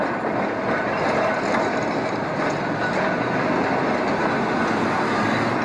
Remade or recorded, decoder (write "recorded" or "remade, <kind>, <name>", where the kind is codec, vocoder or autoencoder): recorded